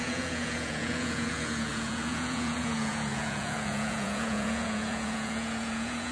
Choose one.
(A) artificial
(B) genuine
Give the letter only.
A